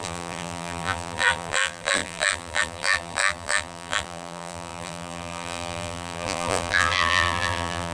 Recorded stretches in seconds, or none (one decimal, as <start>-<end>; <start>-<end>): none